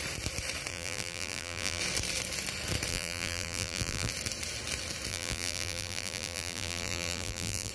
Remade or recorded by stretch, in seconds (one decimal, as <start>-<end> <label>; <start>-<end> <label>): 0.0-0.7 recorded; 0.7-1.8 remade; 1.8-2.9 recorded; 2.9-4.1 remade; 4.1-5.1 recorded; 5.1-7.7 remade